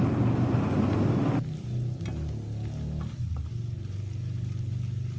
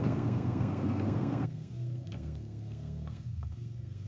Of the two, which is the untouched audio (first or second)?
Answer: first